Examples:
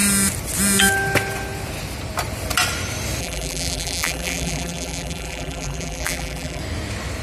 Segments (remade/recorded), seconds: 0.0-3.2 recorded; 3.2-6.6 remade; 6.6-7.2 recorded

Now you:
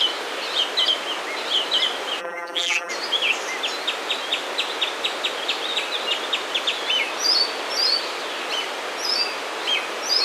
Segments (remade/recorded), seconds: 0.0-2.2 recorded; 2.2-2.9 remade; 2.9-10.2 recorded

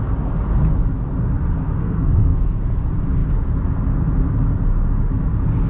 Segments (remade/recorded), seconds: 0.0-1.8 recorded; 1.8-2.6 remade; 2.6-5.7 recorded

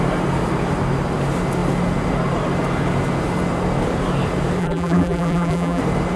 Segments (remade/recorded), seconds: 0.0-4.6 recorded; 4.6-5.8 remade; 5.8-6.2 recorded

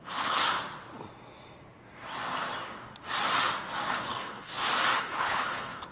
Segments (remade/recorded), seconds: 0.0-0.4 remade; 0.4-3.9 recorded; 3.9-4.5 remade; 4.5-5.0 recorded; 5.0-5.9 remade

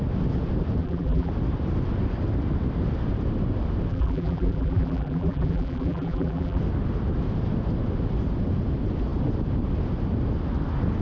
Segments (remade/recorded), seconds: 0.0-0.8 recorded; 0.8-1.3 remade; 1.3-3.9 recorded; 3.9-6.6 remade; 6.6-11.0 recorded

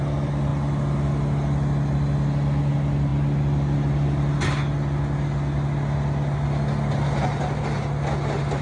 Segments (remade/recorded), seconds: 0.0-8.6 recorded